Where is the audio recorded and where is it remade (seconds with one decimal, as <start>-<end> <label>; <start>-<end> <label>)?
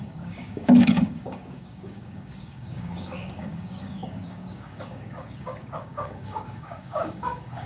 0.0-7.7 remade